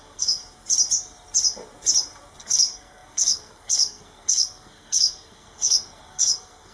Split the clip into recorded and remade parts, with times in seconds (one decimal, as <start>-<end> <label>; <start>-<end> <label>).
0.0-0.4 remade; 0.4-2.4 recorded; 2.4-6.7 remade